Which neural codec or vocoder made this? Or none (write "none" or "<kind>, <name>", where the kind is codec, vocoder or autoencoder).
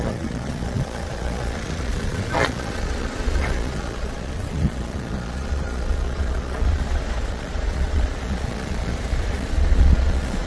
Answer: vocoder, Vocos